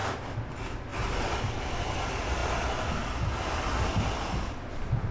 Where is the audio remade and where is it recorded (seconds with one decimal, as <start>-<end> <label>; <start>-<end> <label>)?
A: 0.0-5.1 recorded